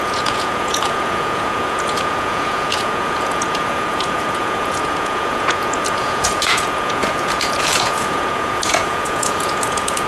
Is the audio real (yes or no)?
no